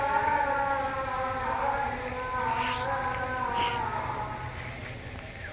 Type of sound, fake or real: real